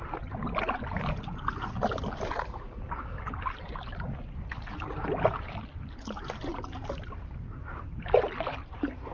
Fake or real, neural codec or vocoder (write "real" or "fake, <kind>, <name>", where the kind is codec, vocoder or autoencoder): real